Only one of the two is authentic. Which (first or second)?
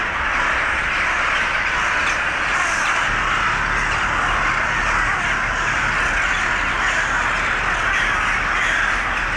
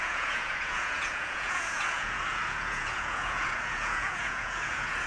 first